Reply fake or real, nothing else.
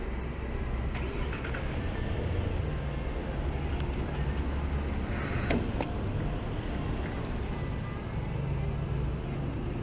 real